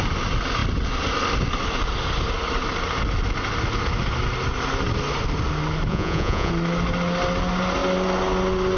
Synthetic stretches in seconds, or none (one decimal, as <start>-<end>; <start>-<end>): 5.9-6.5